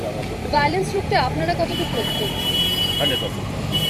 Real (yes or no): no